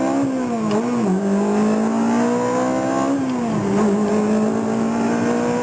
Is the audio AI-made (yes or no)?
no